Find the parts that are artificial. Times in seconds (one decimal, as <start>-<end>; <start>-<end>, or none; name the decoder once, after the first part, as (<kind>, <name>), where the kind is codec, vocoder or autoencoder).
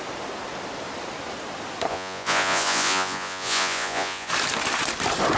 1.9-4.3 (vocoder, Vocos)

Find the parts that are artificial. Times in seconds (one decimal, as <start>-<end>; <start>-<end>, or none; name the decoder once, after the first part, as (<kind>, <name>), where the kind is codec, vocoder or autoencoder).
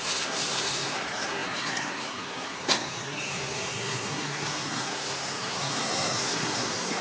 0.0-7.0 (codec, SNAC)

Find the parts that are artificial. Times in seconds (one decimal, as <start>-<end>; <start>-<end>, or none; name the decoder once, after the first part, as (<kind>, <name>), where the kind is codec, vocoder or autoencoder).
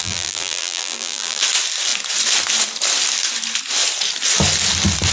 0.0-1.4 (vocoder, BigVGAN v2)